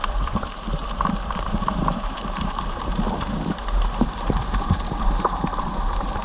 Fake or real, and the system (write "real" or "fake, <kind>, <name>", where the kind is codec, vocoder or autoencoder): fake, vocoder, BigVGAN v2